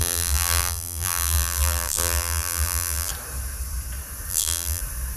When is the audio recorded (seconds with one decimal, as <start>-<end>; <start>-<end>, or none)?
3.1-4.3; 4.8-5.2